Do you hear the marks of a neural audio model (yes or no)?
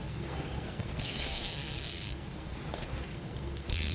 yes